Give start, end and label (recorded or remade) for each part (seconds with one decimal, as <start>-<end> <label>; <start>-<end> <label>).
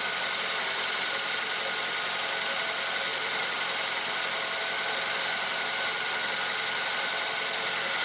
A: 0.0-8.0 recorded